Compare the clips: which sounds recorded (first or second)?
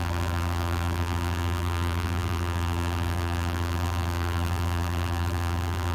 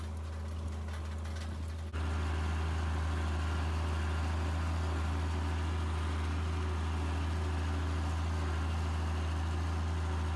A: second